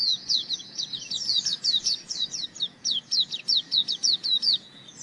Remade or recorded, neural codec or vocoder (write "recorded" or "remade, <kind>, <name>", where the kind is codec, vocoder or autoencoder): remade, vocoder, Vocos